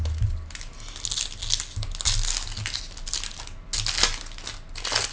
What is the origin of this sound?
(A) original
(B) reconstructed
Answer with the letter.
A